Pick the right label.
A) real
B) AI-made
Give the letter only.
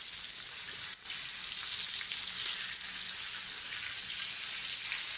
A